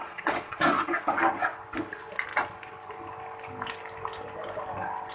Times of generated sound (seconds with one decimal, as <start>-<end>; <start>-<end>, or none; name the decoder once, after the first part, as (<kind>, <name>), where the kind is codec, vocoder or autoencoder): 0.0-1.0 (vocoder, Vocos)